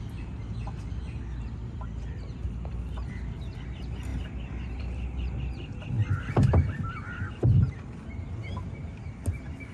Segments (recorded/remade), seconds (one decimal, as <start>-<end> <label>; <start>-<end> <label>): 0.0-9.7 recorded